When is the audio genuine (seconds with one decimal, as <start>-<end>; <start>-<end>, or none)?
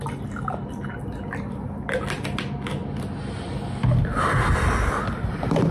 0.0-5.7